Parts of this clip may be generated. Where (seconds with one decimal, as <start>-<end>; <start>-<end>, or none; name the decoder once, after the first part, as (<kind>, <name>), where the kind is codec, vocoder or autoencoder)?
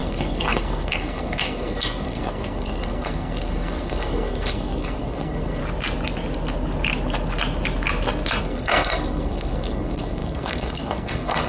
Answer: 0.0-5.6 (codec, SNAC); 8.4-11.5